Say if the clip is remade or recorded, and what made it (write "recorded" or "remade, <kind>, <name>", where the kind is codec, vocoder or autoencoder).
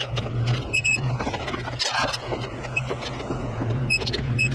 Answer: remade, vocoder, Vocos